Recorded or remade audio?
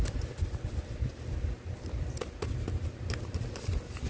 recorded